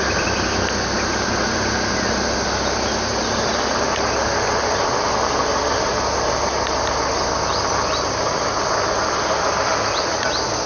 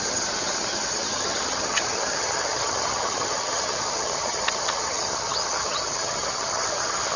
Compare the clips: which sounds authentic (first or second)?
first